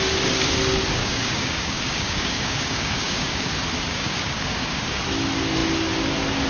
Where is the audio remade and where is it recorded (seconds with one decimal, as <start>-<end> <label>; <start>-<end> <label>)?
0.0-1.0 recorded; 1.0-3.5 remade; 3.5-3.9 recorded; 3.9-5.0 remade; 5.0-6.5 recorded